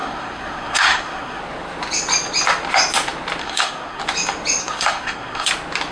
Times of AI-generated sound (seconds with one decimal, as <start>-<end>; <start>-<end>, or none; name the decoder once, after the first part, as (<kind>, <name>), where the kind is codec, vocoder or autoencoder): 0.0-1.4 (codec, SNAC); 3.4-4.0; 4.6-5.5